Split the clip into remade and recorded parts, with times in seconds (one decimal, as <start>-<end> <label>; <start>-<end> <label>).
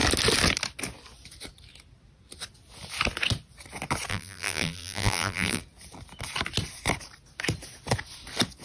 0.0-4.1 recorded; 4.1-5.6 remade; 5.6-8.6 recorded